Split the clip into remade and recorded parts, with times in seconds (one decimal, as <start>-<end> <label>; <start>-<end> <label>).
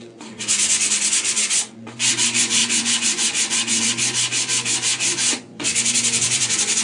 0.0-6.8 remade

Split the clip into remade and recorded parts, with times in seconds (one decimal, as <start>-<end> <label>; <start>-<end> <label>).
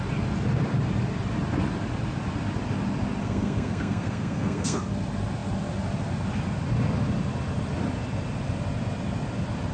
0.0-3.2 recorded; 3.2-4.8 remade; 4.8-9.7 recorded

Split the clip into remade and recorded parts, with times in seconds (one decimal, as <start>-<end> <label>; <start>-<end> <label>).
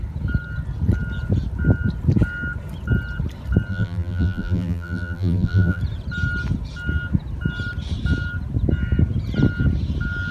0.0-3.7 recorded; 3.7-5.8 remade; 5.8-10.3 recorded